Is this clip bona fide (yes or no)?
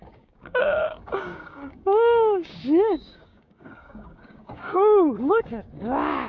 no